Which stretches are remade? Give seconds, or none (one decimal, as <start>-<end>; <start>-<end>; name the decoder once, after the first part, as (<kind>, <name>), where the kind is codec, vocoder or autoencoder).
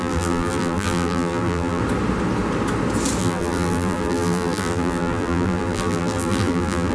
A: 0.0-1.8 (vocoder, BigVGAN v2); 3.2-6.9